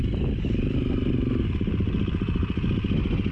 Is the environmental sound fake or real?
real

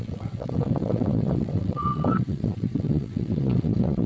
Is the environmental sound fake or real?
fake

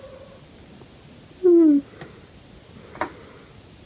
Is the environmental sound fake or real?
real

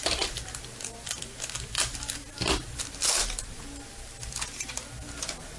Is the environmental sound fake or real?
real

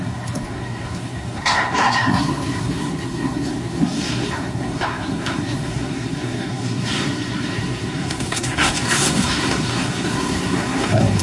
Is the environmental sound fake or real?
fake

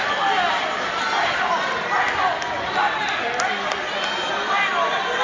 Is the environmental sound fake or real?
real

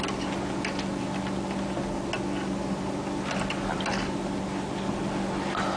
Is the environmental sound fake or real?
real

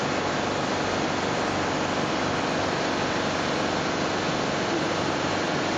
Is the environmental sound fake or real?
real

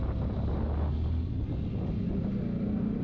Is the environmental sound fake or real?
real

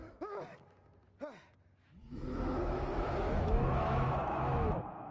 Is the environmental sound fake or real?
fake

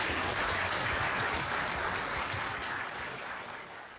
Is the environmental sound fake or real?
fake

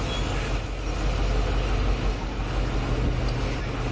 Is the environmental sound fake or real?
real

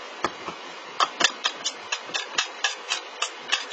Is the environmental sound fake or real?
real